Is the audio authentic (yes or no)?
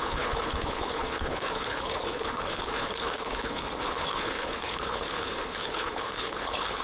no